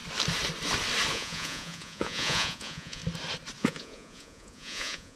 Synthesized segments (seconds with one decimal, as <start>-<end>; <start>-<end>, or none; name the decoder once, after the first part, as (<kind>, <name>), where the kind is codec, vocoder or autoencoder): 1.1-3.0 (vocoder, Vocos); 3.6-5.2